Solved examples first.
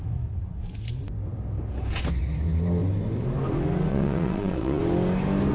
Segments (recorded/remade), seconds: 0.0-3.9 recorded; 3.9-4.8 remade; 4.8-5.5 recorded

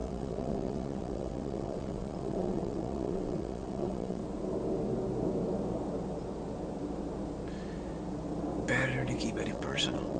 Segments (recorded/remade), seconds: 0.0-4.2 remade; 4.2-9.5 recorded; 9.5-10.2 remade

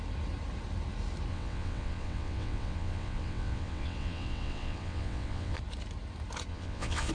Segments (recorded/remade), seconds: 0.0-1.3 recorded; 1.3-5.6 remade; 5.6-6.5 recorded; 6.5-7.1 remade

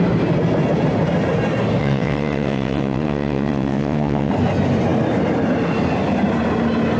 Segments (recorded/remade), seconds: 0.0-1.8 recorded; 1.8-4.3 remade; 4.3-7.0 recorded

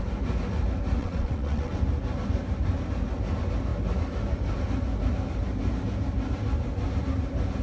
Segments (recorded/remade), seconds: 0.0-1.0 recorded; 1.0-1.7 remade; 1.7-7.6 recorded